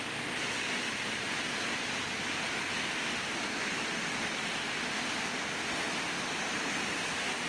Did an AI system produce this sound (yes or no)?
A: no